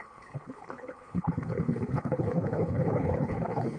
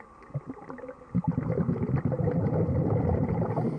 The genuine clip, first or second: second